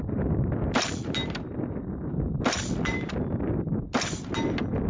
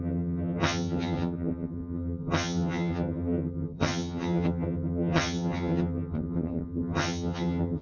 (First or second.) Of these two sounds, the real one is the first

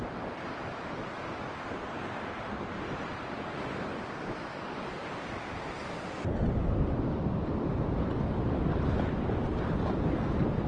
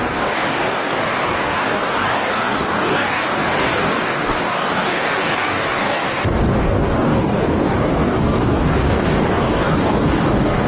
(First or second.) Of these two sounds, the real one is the first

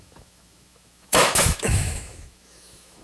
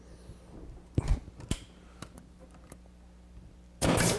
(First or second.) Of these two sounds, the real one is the second